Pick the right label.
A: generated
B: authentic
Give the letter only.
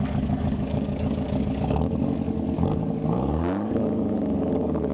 A